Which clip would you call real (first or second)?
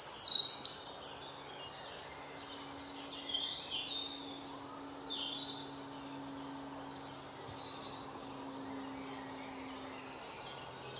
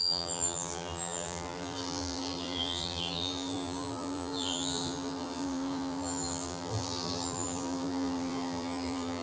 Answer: first